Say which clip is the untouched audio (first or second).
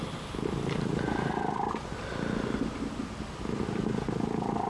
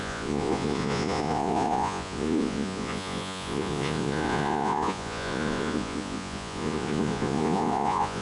first